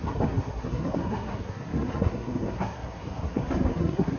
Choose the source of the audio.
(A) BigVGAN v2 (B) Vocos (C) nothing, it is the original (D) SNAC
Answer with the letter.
D